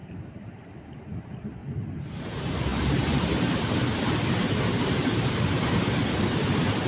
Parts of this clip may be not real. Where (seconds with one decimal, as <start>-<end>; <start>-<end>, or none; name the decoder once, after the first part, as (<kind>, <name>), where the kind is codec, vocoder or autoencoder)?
0.0-1.6 (vocoder, BigVGAN v2); 2.2-6.9